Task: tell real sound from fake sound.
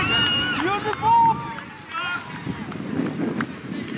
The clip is real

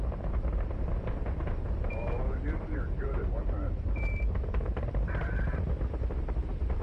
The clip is fake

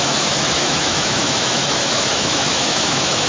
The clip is fake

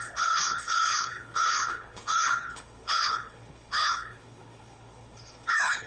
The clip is fake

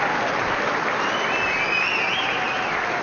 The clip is real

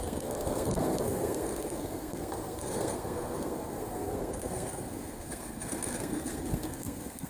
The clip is fake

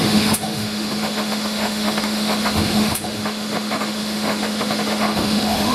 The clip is fake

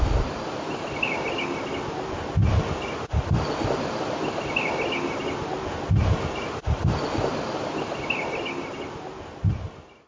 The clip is real